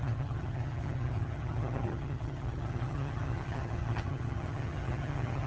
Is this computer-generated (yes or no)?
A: yes